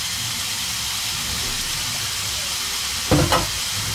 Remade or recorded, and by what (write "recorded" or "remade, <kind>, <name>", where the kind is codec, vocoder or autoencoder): recorded